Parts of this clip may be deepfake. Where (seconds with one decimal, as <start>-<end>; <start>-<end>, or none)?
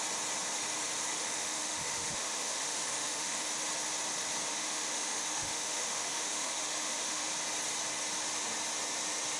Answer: 1.1-3.5; 4.5-7.3